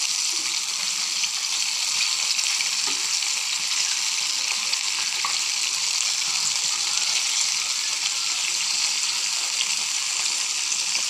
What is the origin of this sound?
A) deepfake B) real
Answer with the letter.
B